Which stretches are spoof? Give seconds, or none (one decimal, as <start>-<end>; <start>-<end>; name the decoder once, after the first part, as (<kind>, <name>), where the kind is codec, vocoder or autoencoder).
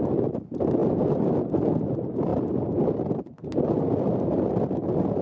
none